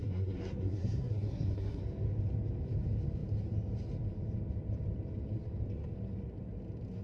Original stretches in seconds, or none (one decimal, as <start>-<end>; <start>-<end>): 1.8-7.0